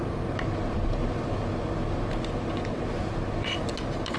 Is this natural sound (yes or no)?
yes